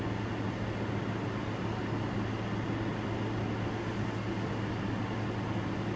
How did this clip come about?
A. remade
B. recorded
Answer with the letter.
B